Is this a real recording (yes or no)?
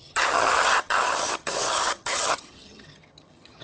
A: no